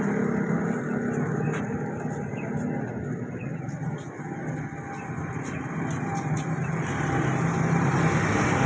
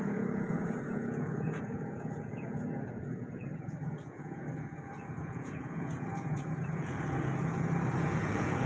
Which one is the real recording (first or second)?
first